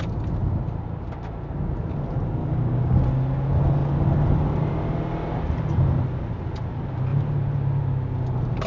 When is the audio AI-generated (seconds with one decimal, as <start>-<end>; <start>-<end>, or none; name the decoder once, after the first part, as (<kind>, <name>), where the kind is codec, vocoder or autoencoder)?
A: 2.4-3.0 (codec, DAC)

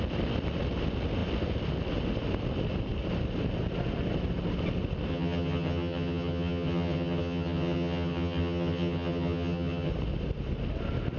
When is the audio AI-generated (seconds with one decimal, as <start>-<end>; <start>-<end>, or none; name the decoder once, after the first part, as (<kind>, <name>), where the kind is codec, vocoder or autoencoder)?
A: 5.1-9.9 (vocoder, HiFi-GAN)

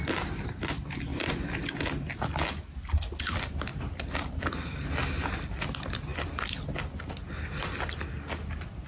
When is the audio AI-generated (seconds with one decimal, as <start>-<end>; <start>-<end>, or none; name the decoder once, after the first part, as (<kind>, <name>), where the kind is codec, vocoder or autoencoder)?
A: 1.1-1.7 (vocoder, BigVGAN v2); 3.7-5.3

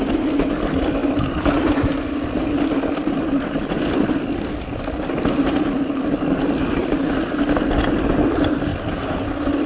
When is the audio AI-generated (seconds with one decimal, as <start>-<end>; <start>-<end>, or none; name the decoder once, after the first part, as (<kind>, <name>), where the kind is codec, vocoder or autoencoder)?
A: 1.0-5.9 (vocoder, BigVGAN v2); 6.8-7.7

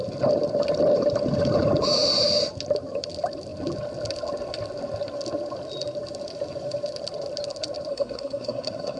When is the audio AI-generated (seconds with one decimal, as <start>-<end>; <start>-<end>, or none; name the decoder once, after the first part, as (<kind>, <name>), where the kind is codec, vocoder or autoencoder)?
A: 7.9-9.0 (codec, SNAC)